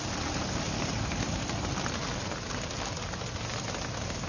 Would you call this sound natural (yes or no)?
yes